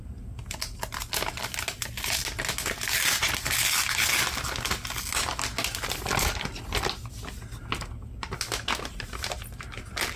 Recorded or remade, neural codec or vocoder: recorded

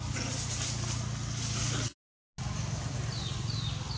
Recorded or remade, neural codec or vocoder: recorded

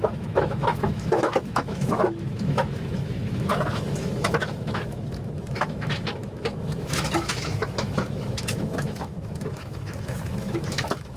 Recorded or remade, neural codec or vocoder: remade, autoencoder, DAC-VAE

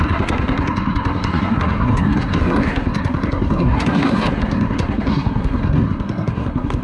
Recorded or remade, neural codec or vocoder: remade, codec, SNAC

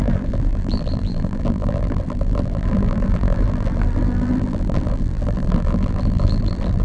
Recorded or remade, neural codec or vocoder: remade, vocoder, BigVGAN v2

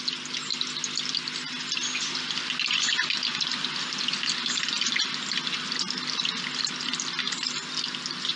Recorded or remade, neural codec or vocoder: recorded